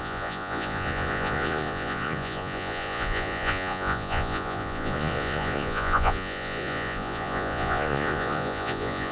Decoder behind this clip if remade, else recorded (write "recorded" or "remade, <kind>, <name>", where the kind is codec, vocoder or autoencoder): remade, vocoder, Vocos